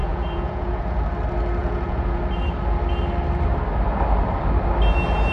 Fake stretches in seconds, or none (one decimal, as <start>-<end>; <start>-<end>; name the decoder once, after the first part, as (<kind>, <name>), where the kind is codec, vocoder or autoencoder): 0.0-1.0 (vocoder, Vocos); 1.6-2.2